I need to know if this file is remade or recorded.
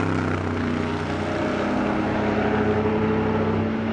recorded